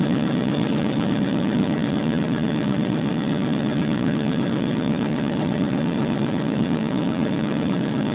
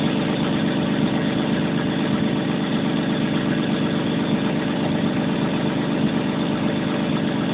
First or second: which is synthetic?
first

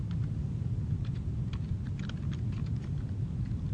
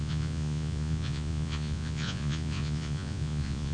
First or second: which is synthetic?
second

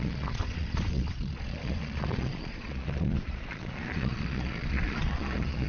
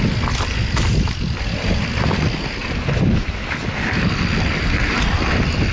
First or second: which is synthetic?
first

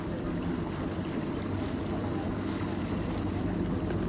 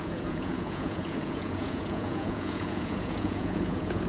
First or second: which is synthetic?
second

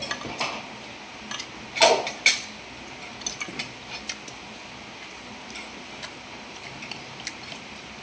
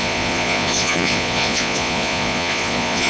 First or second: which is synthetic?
second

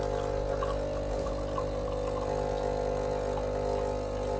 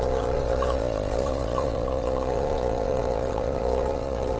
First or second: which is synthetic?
second